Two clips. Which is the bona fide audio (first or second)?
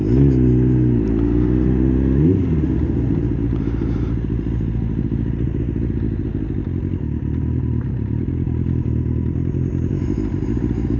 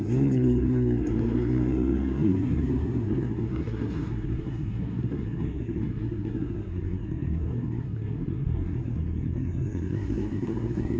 first